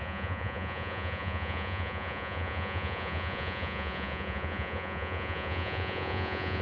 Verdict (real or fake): fake